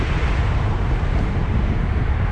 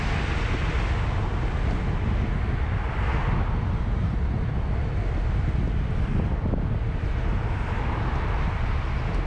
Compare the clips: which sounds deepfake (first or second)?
first